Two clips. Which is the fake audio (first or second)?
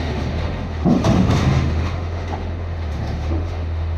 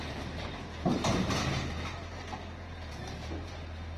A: first